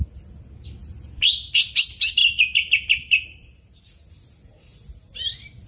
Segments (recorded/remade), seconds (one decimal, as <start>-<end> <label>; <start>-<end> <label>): 0.0-0.8 recorded; 0.8-1.6 remade; 1.6-2.2 recorded; 2.2-3.8 remade; 3.8-4.7 recorded; 4.7-5.7 remade